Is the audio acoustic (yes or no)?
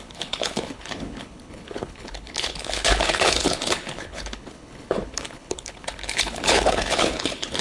no